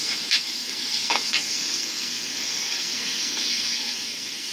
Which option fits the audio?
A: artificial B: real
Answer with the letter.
A